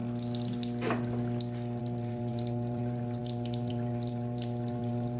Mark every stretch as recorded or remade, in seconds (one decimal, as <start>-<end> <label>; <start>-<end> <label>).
0.0-1.8 recorded; 1.8-5.2 remade